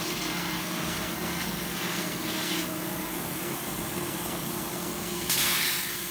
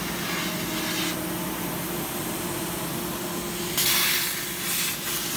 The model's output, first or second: first